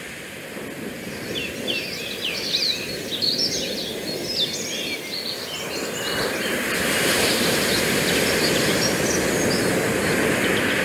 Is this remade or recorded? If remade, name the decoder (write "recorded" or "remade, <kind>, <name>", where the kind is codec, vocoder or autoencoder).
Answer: recorded